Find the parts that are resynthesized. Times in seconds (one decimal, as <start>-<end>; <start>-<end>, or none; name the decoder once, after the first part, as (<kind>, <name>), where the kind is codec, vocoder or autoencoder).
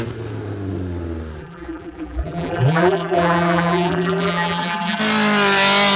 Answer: 1.4-5.0 (vocoder, BigVGAN v2)